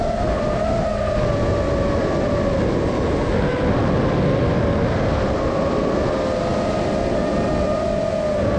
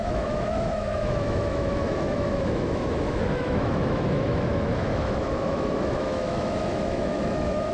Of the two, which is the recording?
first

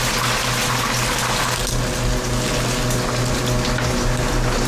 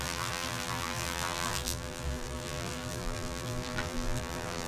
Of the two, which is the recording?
first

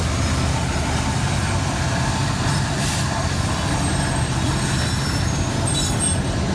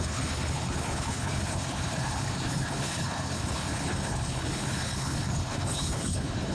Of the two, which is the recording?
first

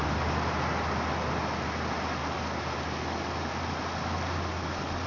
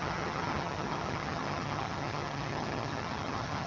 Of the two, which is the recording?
first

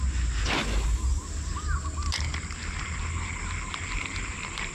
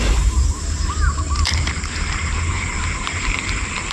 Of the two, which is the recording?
first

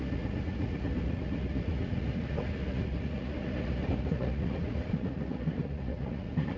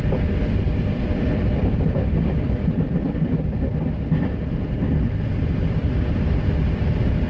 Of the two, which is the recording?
second